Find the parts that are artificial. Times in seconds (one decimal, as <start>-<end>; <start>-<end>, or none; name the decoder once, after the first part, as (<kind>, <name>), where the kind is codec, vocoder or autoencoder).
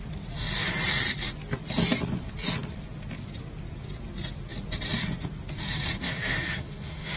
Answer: 6.0-7.2 (autoencoder, DAC-VAE)